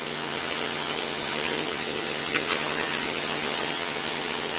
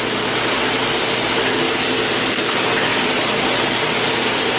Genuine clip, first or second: second